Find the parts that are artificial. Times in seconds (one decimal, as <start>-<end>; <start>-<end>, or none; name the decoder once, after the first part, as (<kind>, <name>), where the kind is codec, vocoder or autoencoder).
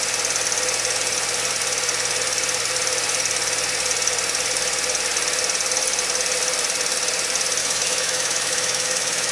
7.6-9.3 (autoencoder, DAC-VAE)